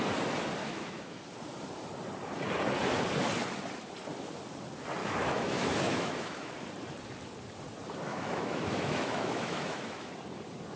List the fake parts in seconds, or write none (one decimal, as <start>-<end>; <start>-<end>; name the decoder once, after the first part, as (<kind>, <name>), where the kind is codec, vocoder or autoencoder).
0.6-1.2 (autoencoder, DAC-VAE); 5.0-6.5; 8.1-10.1